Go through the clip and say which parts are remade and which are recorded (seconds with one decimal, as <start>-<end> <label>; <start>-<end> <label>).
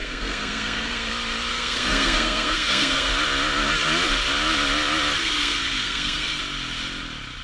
0.0-1.1 remade; 1.1-1.5 recorded; 1.5-3.1 remade; 3.1-5.2 recorded; 5.2-6.4 remade; 6.4-7.4 recorded